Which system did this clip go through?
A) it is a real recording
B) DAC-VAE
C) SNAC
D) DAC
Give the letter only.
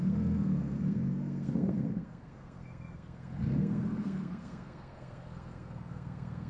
C